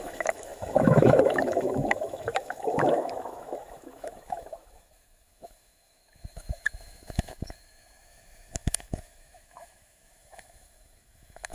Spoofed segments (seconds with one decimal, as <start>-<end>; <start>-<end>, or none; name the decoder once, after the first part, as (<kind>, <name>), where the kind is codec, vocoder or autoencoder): 0.0-11.5 (autoencoder, DAC-VAE)